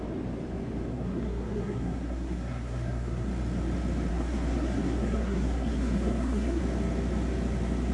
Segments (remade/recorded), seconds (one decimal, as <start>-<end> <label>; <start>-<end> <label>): 0.0-0.9 recorded; 0.9-3.3 remade; 3.3-4.1 recorded; 4.1-6.6 remade; 6.6-7.9 recorded